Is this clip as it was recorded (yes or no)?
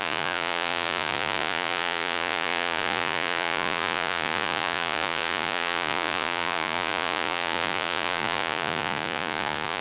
no